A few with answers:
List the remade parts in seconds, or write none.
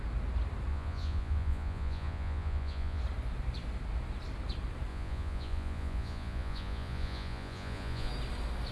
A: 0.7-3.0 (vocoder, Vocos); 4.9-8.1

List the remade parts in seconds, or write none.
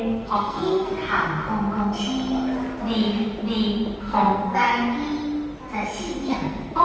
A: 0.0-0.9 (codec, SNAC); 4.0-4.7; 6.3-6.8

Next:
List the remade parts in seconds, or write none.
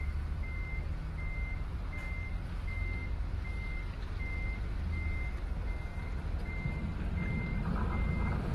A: none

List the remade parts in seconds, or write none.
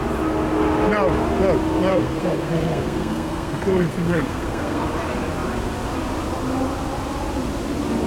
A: 1.9-4.8 (codec, SNAC)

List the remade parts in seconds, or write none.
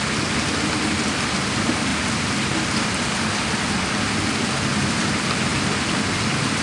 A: none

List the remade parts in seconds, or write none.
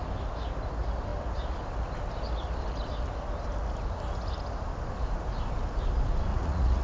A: 6.3-6.8 (vocoder, Vocos)